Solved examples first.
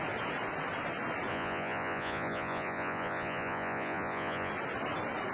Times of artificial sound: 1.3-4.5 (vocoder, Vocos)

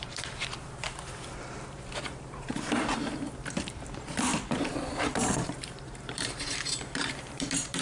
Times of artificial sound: 0.0-4.3 (vocoder, BigVGAN v2); 5.1-7.8

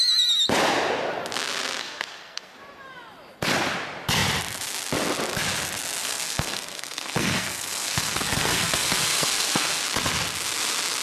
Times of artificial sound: 1.8-2.6 (codec, SNAC); 6.0-9.8

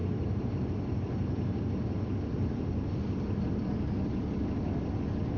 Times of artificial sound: 0.0-0.7 (vocoder, BigVGAN v2)